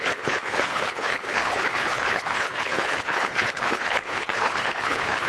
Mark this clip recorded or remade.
remade